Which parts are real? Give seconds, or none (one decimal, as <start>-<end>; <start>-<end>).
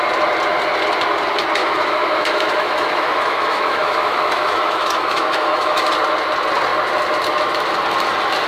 0.0-1.6; 5.9-8.5